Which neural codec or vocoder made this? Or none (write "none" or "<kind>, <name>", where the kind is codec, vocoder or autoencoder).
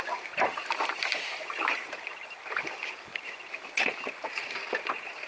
none